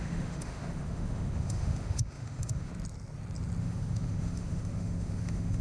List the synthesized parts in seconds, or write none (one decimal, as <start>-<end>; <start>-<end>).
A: 0.0-2.7; 3.6-5.6